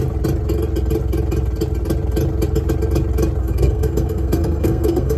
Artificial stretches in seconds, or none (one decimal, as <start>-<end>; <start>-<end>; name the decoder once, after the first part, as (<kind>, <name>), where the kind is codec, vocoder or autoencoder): 3.4-5.2 (codec, SNAC)